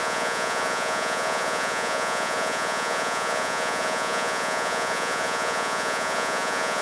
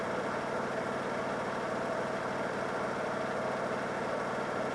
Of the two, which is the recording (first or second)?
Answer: second